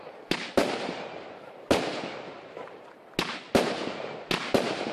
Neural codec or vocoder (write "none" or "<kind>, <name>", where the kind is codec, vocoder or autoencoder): none